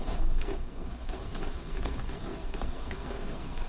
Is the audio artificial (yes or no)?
yes